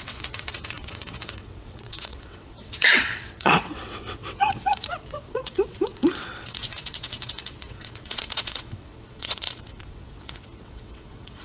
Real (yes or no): no